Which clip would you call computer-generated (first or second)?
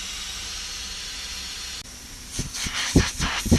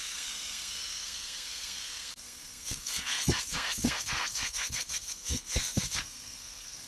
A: second